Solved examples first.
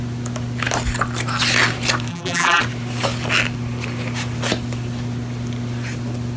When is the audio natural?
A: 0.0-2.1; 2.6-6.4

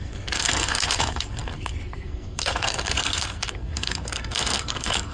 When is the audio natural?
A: none

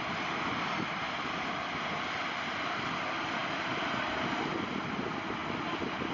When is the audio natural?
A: 0.0-6.1